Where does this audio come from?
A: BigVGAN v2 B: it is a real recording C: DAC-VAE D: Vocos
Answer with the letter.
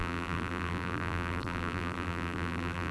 A